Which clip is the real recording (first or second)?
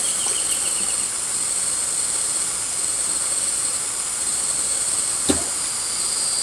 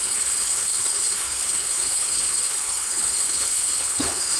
first